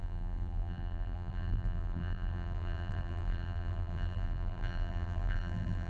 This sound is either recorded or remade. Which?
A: remade